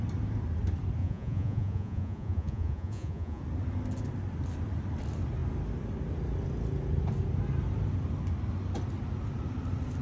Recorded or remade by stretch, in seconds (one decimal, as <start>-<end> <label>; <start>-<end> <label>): 0.0-1.0 recorded; 1.0-3.4 remade; 3.4-10.0 recorded